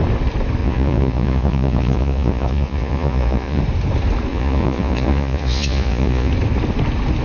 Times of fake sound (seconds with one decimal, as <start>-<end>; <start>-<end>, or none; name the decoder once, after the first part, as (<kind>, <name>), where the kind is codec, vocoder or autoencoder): 0.6-3.6 (vocoder, Vocos); 4.3-6.3